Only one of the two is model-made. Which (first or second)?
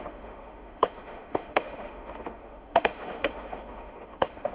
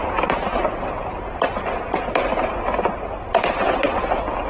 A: first